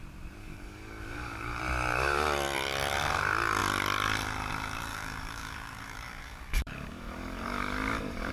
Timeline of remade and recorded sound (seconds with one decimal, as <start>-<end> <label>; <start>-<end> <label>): 0.0-0.4 recorded; 0.4-1.6 remade; 1.6-4.9 recorded; 4.9-8.3 remade